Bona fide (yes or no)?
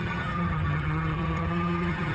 no